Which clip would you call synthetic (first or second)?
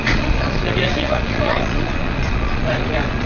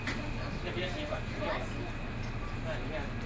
first